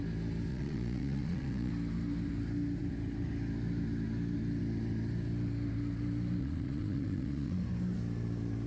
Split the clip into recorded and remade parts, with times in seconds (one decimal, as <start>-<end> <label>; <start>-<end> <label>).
0.0-0.5 recorded; 0.5-1.7 remade; 1.7-6.4 recorded; 6.4-7.6 remade; 7.6-8.7 recorded